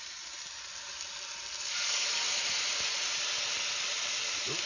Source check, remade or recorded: recorded